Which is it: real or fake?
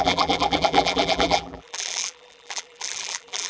fake